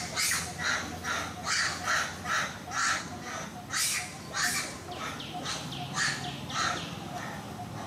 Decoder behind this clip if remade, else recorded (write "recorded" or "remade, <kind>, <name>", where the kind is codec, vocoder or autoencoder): recorded